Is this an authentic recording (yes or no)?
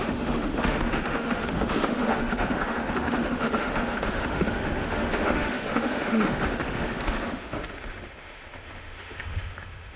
no